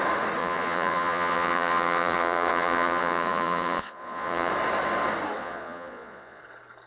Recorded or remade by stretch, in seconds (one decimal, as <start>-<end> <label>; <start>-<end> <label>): 0.0-0.4 recorded; 0.4-4.5 remade; 4.5-5.4 recorded; 5.4-6.4 remade; 6.4-6.9 recorded